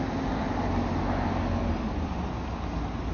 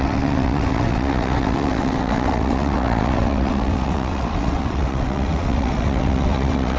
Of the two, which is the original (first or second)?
first